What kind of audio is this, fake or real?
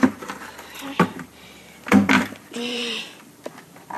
fake